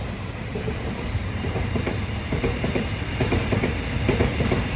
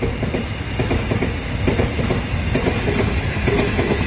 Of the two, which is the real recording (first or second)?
second